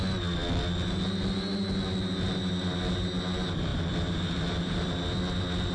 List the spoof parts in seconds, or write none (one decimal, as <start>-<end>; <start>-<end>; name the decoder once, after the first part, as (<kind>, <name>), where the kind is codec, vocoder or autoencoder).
none